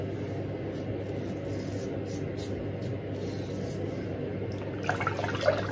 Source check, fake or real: real